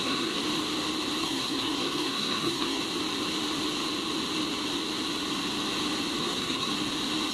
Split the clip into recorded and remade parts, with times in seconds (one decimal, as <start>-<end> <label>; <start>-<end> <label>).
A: 0.0-0.4 remade; 0.4-1.2 recorded; 1.2-2.8 remade; 2.8-6.2 recorded; 6.2-6.7 remade; 6.7-7.3 recorded